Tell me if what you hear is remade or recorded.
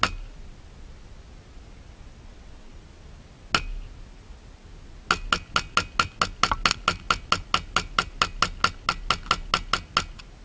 recorded